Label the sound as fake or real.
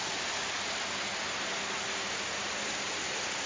real